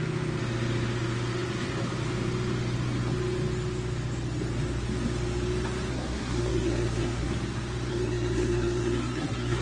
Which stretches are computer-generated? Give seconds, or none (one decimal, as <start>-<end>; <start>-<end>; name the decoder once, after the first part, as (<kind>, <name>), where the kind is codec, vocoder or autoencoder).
5.9-7.3 (codec, SNAC); 7.9-9.6